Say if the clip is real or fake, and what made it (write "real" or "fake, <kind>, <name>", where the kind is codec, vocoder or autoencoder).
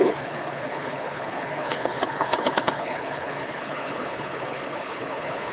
fake, codec, HILCodec